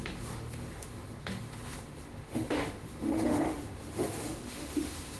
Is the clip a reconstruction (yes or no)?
yes